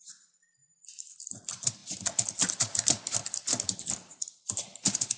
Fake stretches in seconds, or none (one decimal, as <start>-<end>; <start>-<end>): 0.0-0.6; 1.4-1.8; 2.5-5.2